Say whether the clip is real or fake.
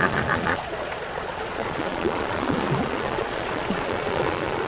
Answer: fake